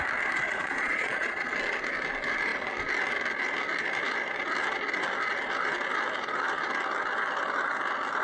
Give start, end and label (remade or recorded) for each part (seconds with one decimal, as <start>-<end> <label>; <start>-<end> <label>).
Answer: 0.0-0.5 recorded; 0.5-1.5 remade; 1.5-8.2 recorded